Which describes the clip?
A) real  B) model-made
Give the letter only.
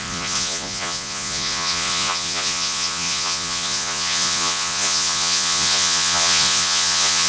B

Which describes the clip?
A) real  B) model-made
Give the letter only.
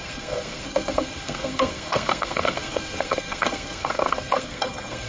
B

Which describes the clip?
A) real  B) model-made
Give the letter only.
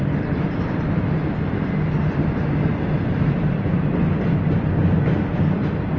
A